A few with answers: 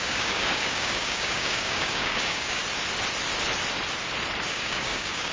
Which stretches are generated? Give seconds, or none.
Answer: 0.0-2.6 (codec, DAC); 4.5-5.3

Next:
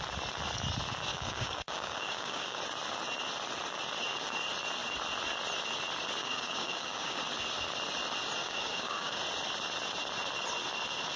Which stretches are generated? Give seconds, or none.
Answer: 1.1-2.6 (codec, DAC); 6.2-7.2; 8.4-9.2

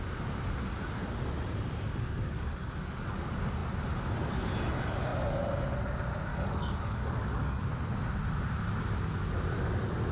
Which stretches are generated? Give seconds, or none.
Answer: 1.9-3.2 (codec, DAC); 6.3-7.6